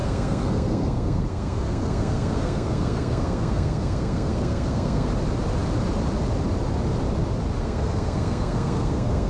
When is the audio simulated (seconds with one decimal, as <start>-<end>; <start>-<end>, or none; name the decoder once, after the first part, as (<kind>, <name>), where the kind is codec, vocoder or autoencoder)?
0.0-5.1 (codec, SNAC); 7.6-9.3